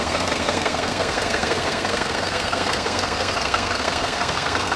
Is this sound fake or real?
fake